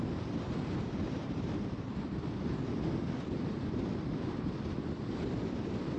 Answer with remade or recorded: remade